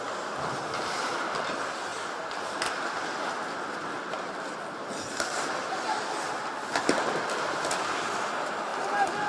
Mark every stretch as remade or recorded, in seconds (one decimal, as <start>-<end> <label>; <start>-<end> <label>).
0.0-9.3 recorded